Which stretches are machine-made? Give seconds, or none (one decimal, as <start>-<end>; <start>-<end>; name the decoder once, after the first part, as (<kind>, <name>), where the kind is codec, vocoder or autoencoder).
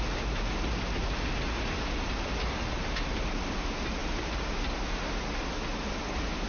none